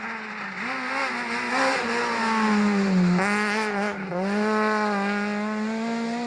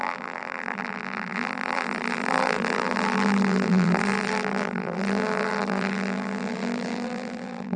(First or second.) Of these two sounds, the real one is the first